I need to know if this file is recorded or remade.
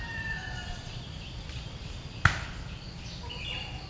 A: recorded